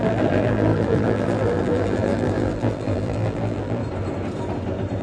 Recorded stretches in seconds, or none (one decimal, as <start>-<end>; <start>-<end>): 3.8-5.0